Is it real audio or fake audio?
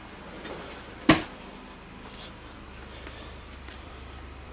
fake